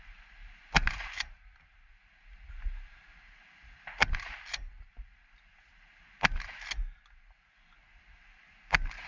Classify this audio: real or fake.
real